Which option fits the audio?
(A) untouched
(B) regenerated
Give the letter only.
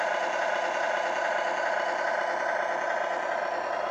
A